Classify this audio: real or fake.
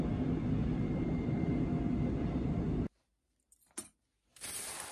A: real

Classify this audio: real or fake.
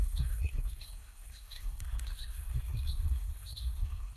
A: fake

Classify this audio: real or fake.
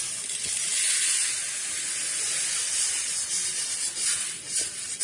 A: real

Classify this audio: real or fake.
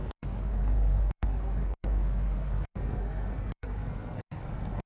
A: fake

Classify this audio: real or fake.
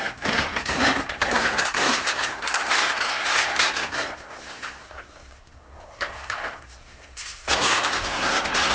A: fake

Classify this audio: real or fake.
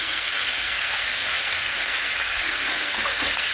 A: fake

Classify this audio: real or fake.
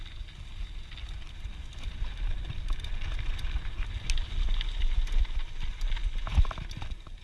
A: real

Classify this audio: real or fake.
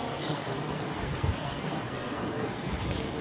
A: fake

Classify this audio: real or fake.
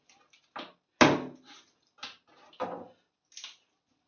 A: real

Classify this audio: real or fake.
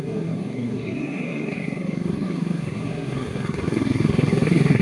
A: fake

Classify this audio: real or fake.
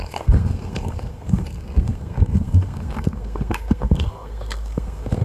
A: fake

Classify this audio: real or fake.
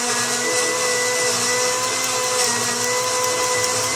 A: real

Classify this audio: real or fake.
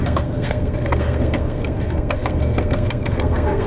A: fake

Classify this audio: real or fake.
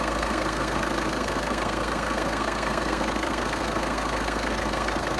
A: fake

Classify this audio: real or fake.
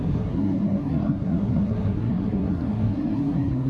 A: fake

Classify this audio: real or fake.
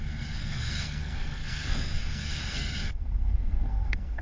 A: fake